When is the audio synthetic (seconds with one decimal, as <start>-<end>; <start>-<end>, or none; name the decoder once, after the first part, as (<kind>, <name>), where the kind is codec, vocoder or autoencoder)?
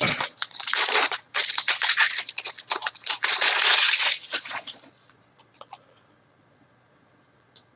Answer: 0.0-7.8 (vocoder, Vocos)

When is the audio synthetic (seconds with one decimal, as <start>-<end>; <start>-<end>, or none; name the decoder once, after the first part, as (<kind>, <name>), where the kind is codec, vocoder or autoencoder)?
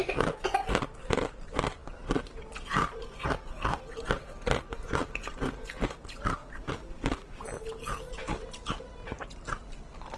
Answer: 0.0-6.4 (vocoder, BigVGAN v2); 8.8-10.2